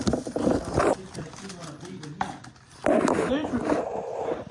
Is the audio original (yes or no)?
yes